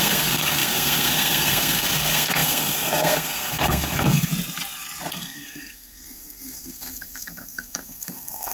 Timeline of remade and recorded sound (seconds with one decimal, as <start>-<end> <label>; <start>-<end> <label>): 0.0-4.3 remade; 4.3-5.1 recorded; 5.1-8.5 remade